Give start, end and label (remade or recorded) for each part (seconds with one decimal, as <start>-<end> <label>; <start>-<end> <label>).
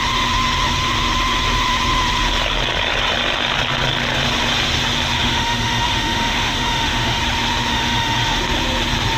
0.0-5.2 recorded; 5.2-7.2 remade; 7.2-7.7 recorded; 7.7-8.4 remade; 8.4-9.2 recorded